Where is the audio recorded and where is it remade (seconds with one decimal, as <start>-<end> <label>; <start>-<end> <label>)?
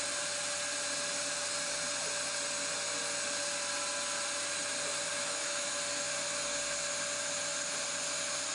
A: 0.0-5.1 recorded; 5.1-5.7 remade; 5.7-8.5 recorded